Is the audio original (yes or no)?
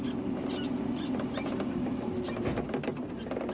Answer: yes